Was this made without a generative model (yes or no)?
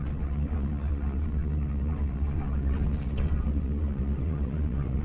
no